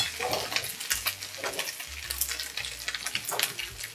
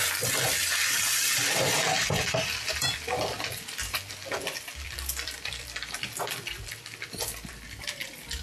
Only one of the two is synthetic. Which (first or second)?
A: second